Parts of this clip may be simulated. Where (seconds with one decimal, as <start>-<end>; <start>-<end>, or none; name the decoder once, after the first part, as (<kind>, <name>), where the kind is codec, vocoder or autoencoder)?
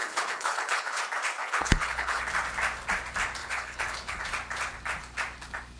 0.0-1.0 (codec, HILCodec); 1.4-2.2; 3.4-4.2